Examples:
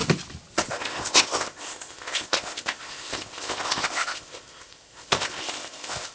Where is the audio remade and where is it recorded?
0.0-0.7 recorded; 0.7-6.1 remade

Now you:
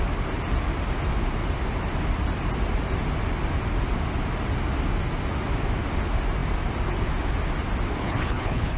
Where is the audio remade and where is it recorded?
0.0-8.0 recorded; 8.0-8.8 remade

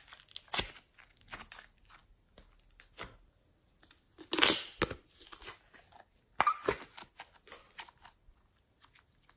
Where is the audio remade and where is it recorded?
0.0-9.4 recorded

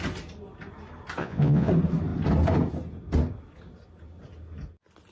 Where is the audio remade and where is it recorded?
0.0-1.2 recorded; 1.2-1.7 remade; 1.7-5.1 recorded

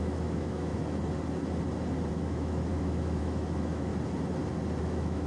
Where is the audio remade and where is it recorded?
0.0-0.8 remade; 0.8-2.1 recorded; 2.1-3.9 remade; 3.9-4.8 recorded; 4.8-5.3 remade

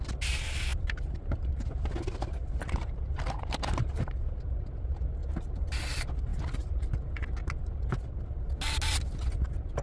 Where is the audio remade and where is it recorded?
0.0-0.7 recorded; 0.7-4.4 remade; 4.4-5.2 recorded; 5.2-5.8 remade; 5.8-9.8 recorded